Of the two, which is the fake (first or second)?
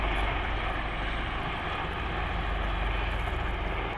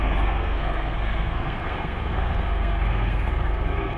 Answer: second